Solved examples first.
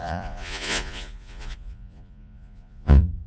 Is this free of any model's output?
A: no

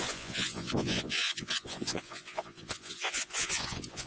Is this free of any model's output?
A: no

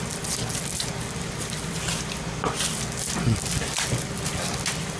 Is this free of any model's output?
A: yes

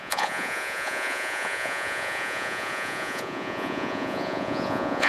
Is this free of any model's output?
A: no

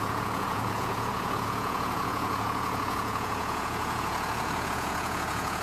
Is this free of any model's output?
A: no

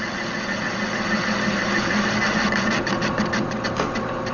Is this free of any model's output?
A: yes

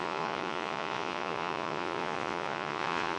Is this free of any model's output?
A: no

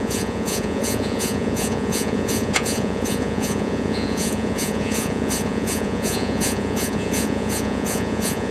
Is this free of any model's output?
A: no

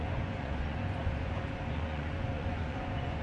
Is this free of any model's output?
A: no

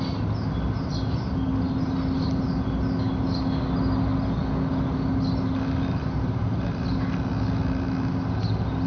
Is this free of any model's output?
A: yes